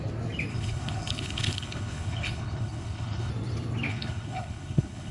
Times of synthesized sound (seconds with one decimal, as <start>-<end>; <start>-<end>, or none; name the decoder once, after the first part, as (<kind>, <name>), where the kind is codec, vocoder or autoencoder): 0.5-3.3 (codec, HILCodec); 3.9-5.1